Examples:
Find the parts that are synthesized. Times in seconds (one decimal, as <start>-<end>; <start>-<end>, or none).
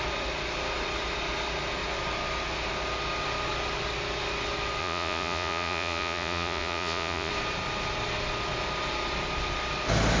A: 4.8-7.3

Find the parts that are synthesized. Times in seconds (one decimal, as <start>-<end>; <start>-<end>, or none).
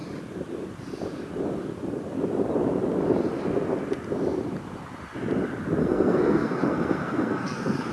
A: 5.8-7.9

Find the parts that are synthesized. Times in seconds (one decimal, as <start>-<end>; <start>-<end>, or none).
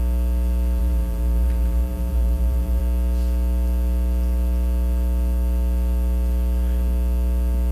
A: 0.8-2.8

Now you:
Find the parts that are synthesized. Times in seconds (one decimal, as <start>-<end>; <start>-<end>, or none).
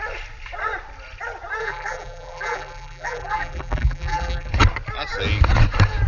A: 1.6-4.5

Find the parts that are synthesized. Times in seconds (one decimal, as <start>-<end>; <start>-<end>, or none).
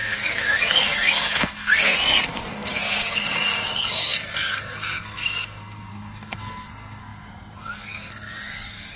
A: 0.0-9.0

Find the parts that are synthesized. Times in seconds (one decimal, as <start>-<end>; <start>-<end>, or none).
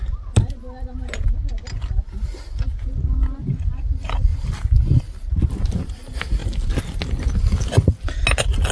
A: none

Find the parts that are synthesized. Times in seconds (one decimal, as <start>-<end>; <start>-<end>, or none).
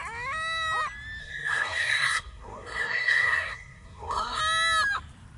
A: 1.2-4.4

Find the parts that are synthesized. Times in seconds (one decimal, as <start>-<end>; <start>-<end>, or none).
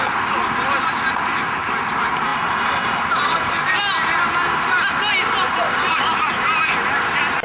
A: none